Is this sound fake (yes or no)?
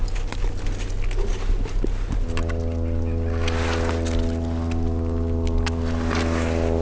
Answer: no